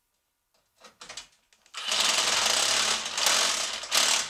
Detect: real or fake real